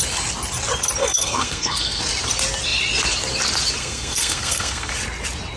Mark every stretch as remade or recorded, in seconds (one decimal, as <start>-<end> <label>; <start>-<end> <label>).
0.0-1.0 recorded; 1.0-2.0 remade; 2.0-3.8 recorded; 3.8-4.9 remade; 4.9-5.6 recorded